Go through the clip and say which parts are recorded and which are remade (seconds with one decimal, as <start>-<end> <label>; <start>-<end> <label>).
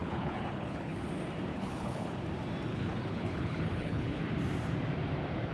0.0-1.1 remade; 1.1-1.5 recorded; 1.5-2.2 remade; 2.2-2.7 recorded; 2.7-4.2 remade; 4.2-5.5 recorded